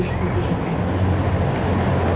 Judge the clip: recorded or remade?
recorded